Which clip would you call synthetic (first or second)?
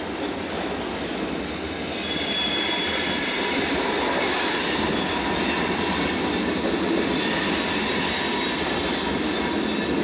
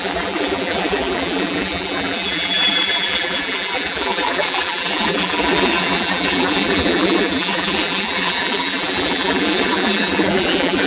second